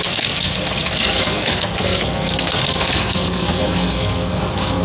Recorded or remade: remade